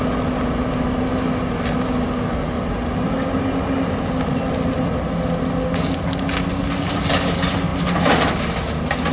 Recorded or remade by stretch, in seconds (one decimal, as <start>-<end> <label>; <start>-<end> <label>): 0.0-9.1 recorded